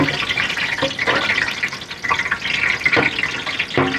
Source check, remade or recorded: recorded